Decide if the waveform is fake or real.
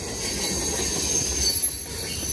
real